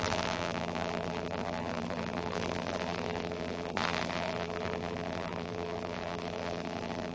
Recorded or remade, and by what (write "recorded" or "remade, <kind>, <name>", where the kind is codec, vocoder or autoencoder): remade, vocoder, BigVGAN v2